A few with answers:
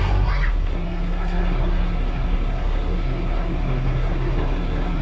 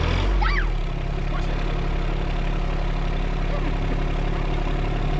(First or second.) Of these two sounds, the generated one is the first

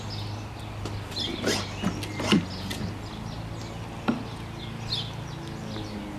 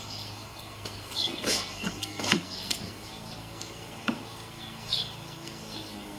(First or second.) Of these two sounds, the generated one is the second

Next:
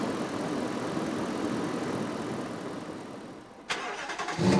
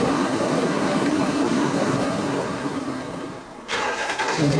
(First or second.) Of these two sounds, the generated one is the second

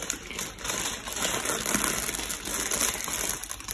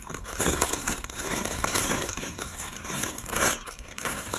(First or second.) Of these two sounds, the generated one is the second